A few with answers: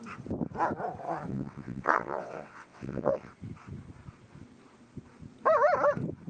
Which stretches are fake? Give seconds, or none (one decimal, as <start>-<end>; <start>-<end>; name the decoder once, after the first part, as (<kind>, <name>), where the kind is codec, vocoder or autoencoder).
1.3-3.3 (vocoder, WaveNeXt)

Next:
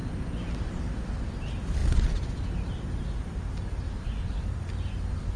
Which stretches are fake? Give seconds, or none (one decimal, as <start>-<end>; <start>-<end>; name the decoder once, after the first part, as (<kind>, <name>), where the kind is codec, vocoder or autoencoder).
none

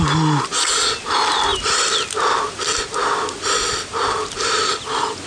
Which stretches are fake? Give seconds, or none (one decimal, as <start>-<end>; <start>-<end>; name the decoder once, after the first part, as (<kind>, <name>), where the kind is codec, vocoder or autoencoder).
none

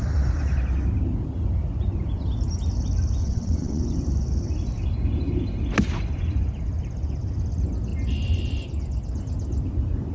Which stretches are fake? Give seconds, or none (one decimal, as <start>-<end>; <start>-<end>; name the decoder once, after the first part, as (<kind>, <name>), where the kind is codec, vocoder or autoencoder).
3.2-3.8 (vocoder, WaveNeXt)

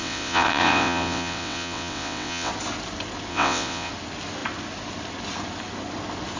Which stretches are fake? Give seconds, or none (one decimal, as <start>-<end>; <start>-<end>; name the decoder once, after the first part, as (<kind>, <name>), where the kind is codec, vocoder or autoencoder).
0.0-2.5 (vocoder, WaveNeXt); 3.3-3.9